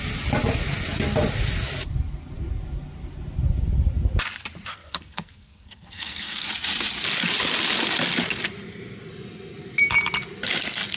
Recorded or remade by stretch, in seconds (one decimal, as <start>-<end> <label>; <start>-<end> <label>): 0.0-4.7 recorded; 4.7-6.5 remade; 6.5-11.0 recorded